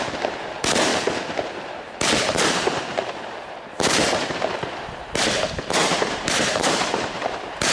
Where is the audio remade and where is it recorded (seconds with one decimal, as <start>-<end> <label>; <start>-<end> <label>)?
0.0-0.9 remade; 0.9-1.4 recorded; 1.4-7.7 remade